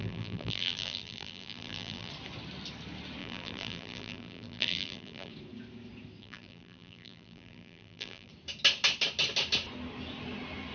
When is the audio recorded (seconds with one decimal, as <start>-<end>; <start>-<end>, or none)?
2.1-3.2; 5.3-6.2; 8.3-10.7